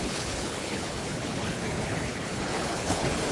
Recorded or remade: remade